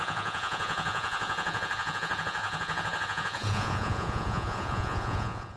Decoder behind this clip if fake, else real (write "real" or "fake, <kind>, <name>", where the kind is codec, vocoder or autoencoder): fake, vocoder, Vocos